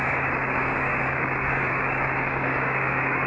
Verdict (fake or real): fake